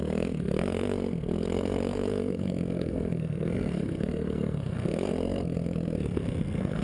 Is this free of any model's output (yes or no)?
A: no